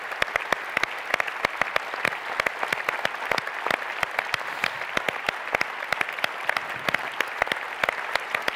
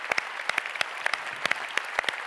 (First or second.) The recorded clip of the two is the first